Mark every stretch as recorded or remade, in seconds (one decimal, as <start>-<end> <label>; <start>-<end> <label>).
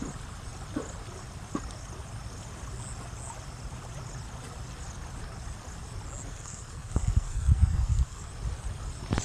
0.0-6.3 recorded; 6.3-8.3 remade; 8.3-9.2 recorded